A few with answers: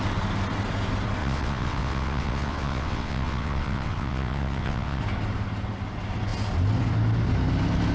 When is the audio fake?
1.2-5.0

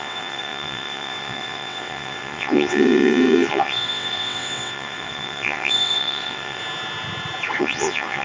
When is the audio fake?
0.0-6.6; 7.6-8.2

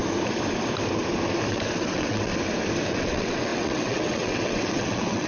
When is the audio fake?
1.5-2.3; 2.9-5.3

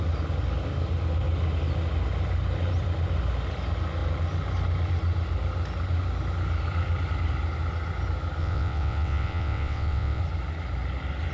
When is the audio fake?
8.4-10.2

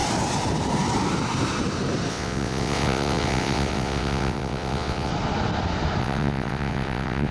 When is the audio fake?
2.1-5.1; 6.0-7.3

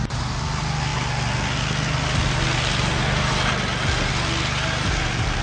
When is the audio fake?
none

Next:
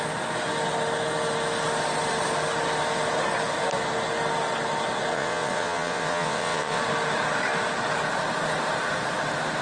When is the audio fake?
5.1-6.8

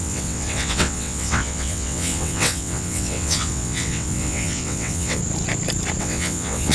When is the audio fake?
0.0-5.2; 6.0-6.7